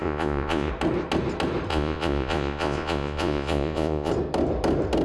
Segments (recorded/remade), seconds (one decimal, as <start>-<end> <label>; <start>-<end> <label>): 0.0-0.7 remade; 0.7-1.7 recorded; 1.7-4.1 remade; 4.1-5.0 recorded